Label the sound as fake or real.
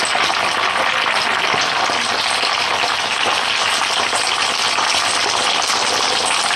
real